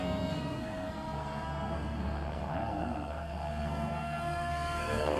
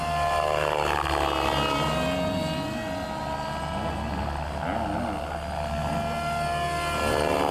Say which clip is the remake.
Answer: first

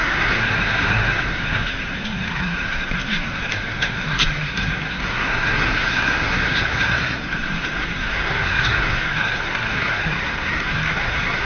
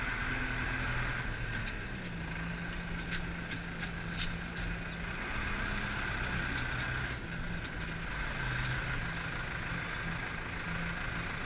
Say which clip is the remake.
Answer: first